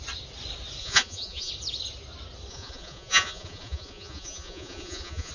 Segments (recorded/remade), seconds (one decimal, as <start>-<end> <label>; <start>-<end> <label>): 0.0-0.8 recorded; 0.8-1.5 remade; 1.5-2.5 recorded; 2.5-5.3 remade